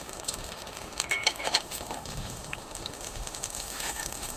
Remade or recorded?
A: remade